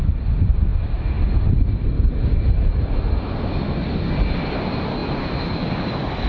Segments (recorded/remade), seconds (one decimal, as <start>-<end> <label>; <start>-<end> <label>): 0.0-6.3 recorded